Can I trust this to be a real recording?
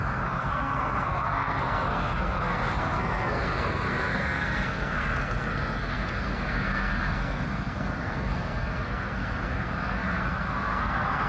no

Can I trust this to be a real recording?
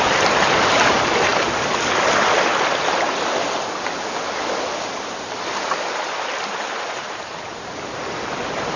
yes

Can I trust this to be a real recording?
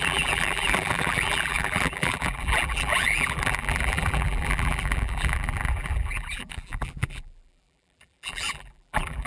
no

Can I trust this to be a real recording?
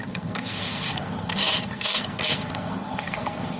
no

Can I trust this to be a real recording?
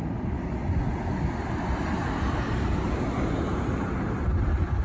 yes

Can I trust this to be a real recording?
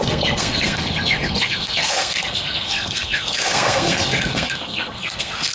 no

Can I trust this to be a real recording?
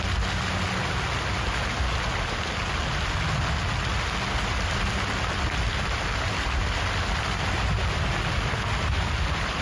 yes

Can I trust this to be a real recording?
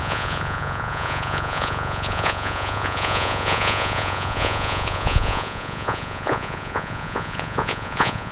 no